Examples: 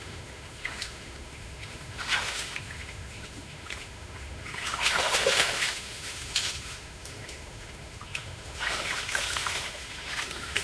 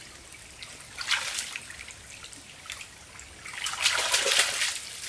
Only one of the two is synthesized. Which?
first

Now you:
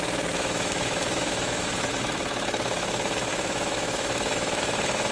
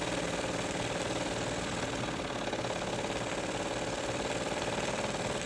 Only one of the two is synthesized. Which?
first